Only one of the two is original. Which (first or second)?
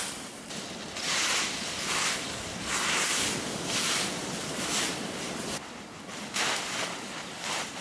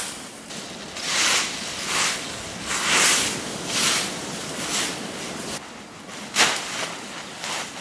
second